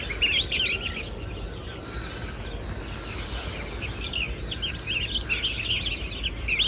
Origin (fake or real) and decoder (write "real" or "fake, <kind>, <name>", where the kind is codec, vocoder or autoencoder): real